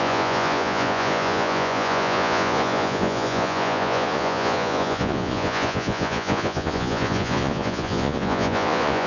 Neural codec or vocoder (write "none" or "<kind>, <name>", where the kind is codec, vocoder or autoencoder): vocoder, Vocos